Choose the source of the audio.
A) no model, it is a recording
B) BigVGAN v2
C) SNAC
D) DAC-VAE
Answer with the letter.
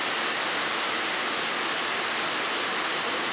A